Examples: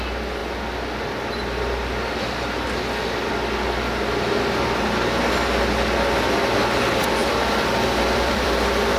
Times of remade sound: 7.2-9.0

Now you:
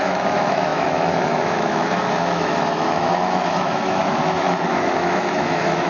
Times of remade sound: 0.0-5.9

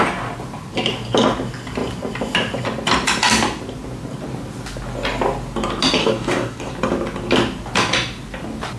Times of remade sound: 6.0-6.7

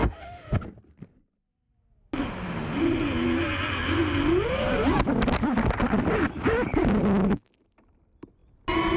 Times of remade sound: 0.0-0.6

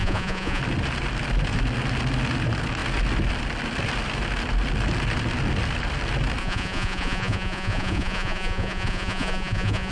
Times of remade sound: 0.0-0.6; 6.4-9.9

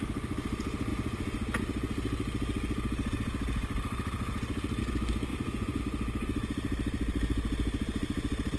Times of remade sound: 5.3-5.8